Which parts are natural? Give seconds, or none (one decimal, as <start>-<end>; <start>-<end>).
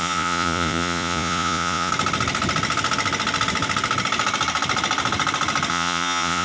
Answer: 1.9-5.7